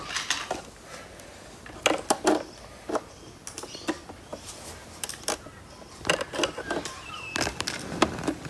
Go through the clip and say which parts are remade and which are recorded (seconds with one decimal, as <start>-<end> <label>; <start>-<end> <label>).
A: 0.0-8.5 recorded